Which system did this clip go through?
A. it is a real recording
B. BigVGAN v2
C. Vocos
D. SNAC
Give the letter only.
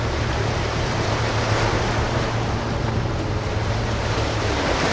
B